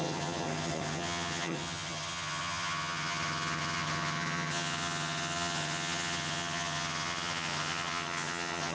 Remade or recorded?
remade